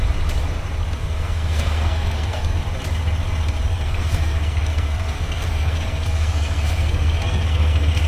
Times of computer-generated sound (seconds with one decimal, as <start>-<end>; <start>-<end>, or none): 1.0-2.6; 3.7-8.1